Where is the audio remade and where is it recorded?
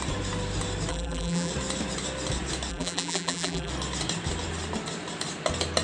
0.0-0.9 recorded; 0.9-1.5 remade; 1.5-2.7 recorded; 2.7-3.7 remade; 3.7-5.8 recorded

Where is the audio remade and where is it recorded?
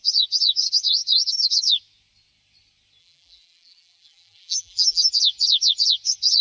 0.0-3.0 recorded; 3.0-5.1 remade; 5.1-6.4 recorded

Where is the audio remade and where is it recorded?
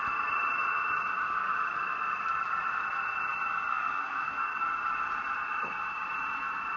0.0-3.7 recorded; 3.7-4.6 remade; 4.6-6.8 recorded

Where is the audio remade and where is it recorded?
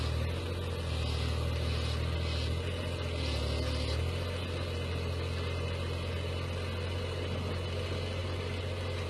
0.0-9.1 recorded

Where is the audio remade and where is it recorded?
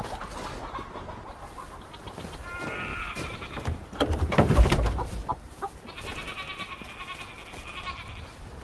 0.0-2.9 recorded; 2.9-5.7 remade; 5.7-8.6 recorded